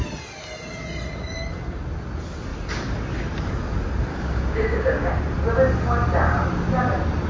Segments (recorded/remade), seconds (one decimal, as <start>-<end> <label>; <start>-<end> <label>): 0.0-4.1 recorded; 4.1-5.1 remade; 5.1-7.3 recorded